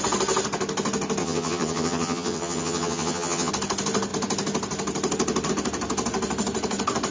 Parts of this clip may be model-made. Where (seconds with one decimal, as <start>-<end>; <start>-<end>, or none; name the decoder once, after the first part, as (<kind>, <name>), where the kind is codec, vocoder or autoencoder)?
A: 1.2-3.5 (vocoder, HiFi-GAN)